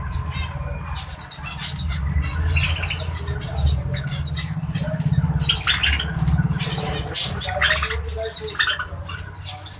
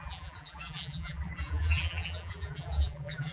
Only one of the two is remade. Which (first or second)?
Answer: second